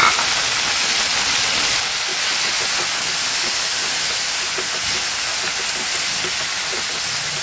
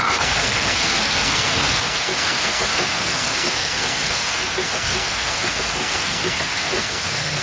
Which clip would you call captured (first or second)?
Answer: first